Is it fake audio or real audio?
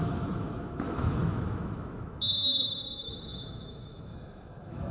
fake